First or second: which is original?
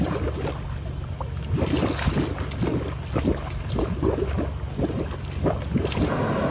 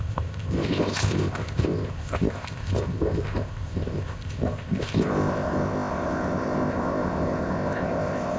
first